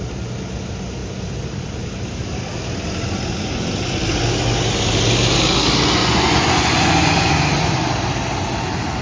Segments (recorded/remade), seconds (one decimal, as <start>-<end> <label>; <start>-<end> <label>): 0.0-6.0 recorded; 6.0-7.3 remade; 7.3-9.0 recorded